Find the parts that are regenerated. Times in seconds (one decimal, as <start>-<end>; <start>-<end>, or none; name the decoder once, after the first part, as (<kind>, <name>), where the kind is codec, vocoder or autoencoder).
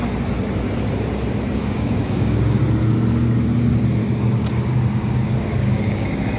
1.6-2.6 (codec, DAC); 4.0-6.4